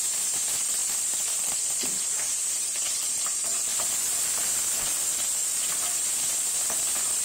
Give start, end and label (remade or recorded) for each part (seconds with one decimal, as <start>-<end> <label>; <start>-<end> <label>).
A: 0.0-0.8 recorded; 0.8-2.5 remade; 2.5-3.7 recorded; 3.7-5.7 remade; 5.7-7.2 recorded